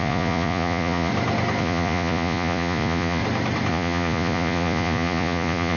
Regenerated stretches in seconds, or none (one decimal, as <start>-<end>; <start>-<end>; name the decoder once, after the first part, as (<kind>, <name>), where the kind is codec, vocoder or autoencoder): 0.0-1.1 (vocoder, Vocos); 1.6-3.2; 3.7-5.8